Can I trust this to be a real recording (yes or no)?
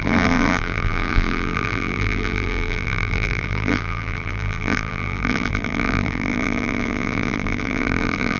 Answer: no